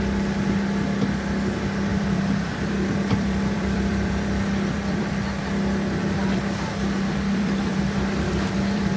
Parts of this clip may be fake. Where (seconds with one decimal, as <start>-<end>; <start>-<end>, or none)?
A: 1.9-5.1; 6.0-9.0